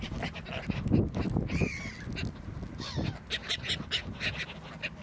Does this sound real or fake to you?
real